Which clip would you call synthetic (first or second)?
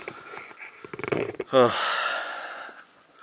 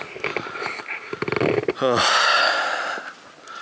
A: first